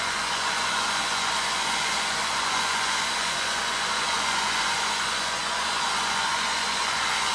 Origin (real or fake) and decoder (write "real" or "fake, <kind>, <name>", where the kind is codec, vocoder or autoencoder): fake, vocoder, Vocos